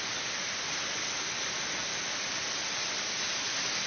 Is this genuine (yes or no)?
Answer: yes